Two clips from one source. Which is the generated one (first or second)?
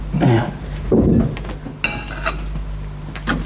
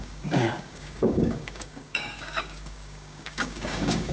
second